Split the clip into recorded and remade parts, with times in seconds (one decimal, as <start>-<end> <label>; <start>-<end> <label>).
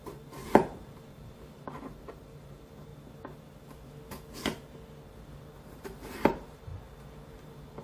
0.0-2.9 remade; 2.9-5.5 recorded; 5.5-6.7 remade; 6.7-7.3 recorded; 7.3-7.8 remade